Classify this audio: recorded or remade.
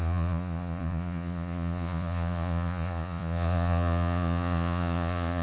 remade